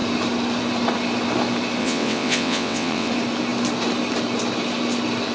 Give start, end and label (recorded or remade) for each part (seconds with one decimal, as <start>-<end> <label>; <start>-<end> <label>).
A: 0.0-1.8 recorded; 1.8-3.1 remade; 3.1-5.3 recorded